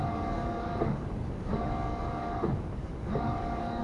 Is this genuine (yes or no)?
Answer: no